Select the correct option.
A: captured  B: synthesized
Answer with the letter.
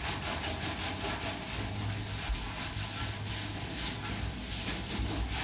A